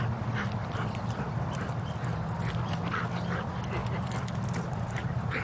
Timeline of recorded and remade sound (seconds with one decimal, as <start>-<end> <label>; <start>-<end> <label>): 0.0-5.4 recorded

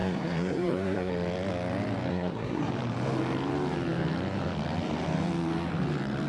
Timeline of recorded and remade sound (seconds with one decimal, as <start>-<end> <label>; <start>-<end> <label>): 0.0-1.1 remade; 1.1-2.1 recorded; 2.1-2.7 remade; 2.7-6.3 recorded

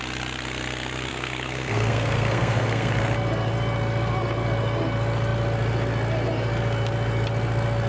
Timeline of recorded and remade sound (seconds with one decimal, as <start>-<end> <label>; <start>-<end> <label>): 0.0-1.1 recorded; 1.1-2.9 remade; 2.9-7.9 recorded

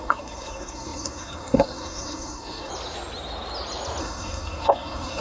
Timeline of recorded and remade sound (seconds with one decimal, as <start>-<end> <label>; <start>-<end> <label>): 0.0-2.7 remade; 2.7-4.0 recorded; 4.0-5.2 remade

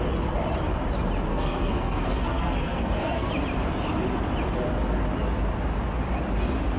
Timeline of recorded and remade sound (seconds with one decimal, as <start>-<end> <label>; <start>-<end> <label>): 0.0-1.3 recorded; 1.3-3.3 remade; 3.3-6.8 recorded

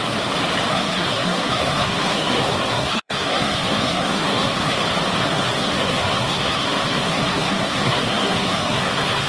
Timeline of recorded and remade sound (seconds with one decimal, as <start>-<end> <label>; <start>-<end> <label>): 0.0-0.7 recorded; 0.7-4.8 remade; 4.8-5.2 recorded; 5.2-9.3 remade